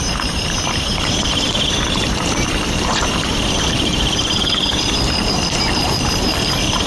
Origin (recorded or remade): remade